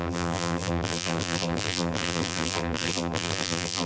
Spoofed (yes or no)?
yes